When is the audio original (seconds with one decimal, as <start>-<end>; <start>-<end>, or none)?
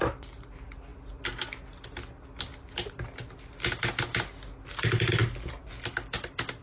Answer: 0.0-6.6